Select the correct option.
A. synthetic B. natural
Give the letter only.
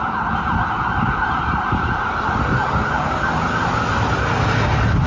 B